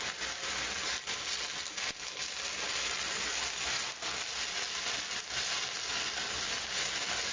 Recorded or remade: recorded